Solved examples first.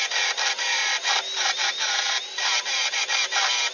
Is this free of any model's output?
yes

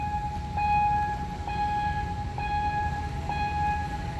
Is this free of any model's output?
yes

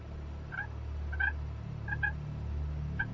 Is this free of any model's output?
yes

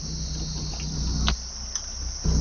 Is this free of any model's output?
yes